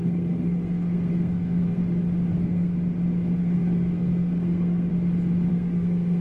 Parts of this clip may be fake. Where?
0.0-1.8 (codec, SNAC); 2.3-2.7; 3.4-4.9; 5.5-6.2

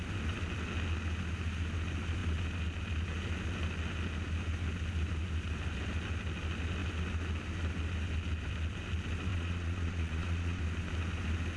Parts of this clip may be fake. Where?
9.3-10.6 (vocoder, Vocos)

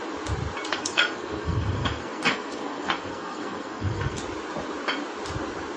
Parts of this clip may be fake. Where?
0.7-4.2 (codec, SNAC)

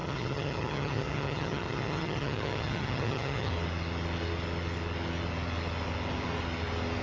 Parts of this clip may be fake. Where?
0.0-3.5 (vocoder, HiFi-GAN)

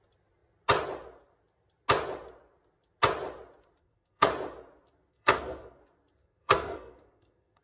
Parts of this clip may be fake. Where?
3.8-4.3 (codec, SNAC); 5.1-5.8; 6.2-7.6

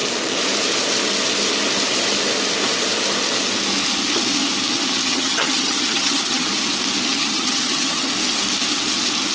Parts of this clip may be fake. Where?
5.0-6.5 (vocoder, HiFi-GAN); 7.1-8.1